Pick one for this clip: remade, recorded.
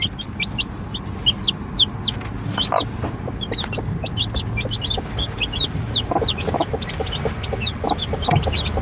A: recorded